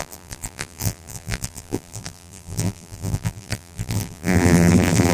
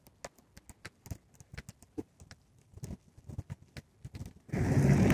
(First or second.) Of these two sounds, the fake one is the first